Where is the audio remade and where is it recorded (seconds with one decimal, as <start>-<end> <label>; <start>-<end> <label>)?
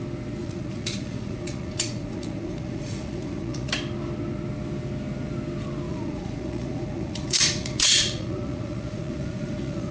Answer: 0.0-0.4 recorded; 0.4-3.7 remade; 3.7-5.9 recorded; 5.9-9.9 remade